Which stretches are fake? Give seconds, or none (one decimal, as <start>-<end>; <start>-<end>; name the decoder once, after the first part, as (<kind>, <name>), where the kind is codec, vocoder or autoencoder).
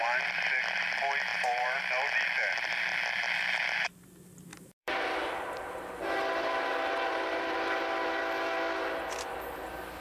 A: 1.3-1.8 (vocoder, BigVGAN v2); 4.5-8.2